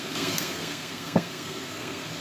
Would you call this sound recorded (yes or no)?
no